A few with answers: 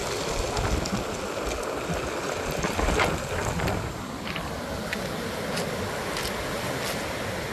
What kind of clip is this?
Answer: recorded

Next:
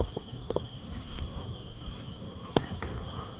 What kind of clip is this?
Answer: remade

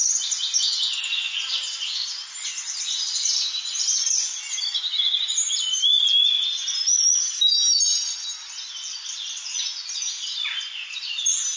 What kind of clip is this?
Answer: recorded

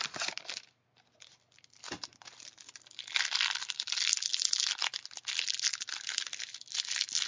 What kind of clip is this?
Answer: recorded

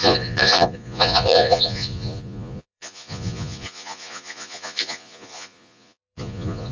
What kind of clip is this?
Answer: remade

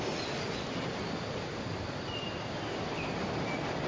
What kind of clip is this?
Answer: recorded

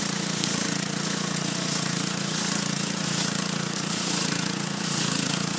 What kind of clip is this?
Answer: remade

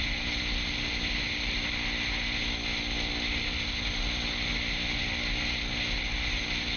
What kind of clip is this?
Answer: recorded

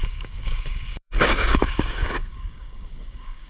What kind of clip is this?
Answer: remade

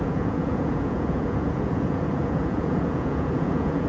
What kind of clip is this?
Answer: remade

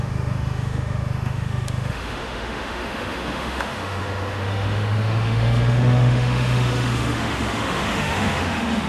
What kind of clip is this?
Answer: remade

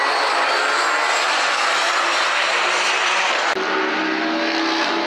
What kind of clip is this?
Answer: recorded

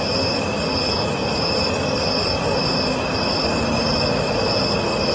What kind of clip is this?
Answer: recorded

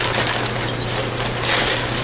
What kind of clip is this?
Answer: recorded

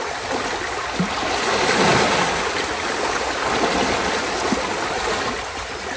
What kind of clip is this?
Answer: recorded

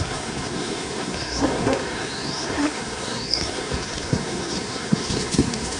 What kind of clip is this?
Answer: remade